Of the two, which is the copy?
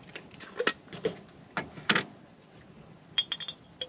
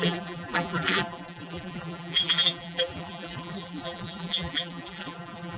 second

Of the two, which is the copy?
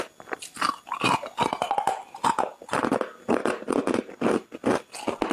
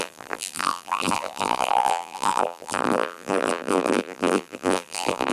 second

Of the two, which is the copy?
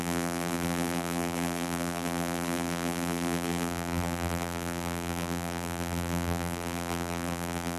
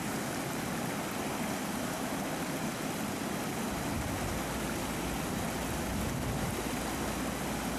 first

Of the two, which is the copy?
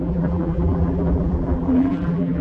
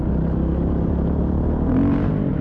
first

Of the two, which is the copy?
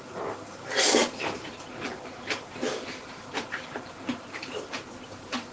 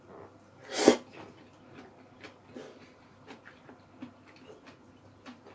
first